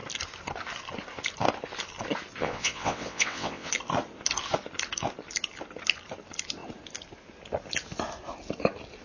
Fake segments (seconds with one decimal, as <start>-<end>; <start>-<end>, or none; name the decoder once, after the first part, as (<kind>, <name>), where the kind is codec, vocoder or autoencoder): 2.4-3.7 (vocoder, WaveNeXt)